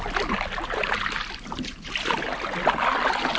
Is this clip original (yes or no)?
yes